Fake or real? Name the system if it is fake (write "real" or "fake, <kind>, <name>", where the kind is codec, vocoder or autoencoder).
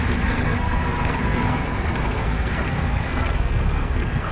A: fake, codec, SNAC